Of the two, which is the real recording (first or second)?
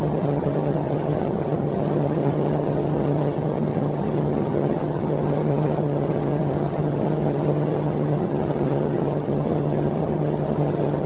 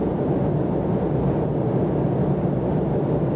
second